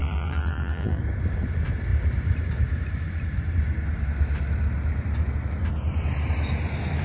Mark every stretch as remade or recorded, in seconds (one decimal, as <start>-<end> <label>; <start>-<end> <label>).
0.0-1.0 remade; 1.0-7.0 recorded